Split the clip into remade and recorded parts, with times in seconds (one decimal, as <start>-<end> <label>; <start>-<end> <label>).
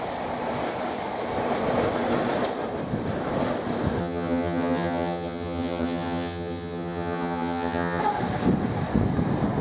0.0-4.0 recorded; 4.0-8.0 remade; 8.0-9.6 recorded